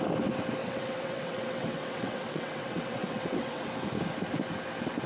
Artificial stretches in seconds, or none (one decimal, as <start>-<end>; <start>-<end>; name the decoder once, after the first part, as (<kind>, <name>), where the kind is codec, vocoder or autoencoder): 0.6-3.7 (vocoder, WaveNeXt)